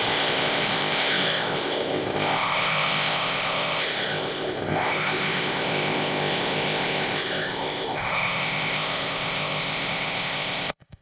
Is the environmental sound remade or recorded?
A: remade